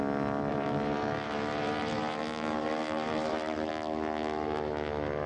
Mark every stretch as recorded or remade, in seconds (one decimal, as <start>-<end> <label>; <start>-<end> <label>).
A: 0.0-0.5 recorded; 0.5-3.7 remade; 3.7-5.3 recorded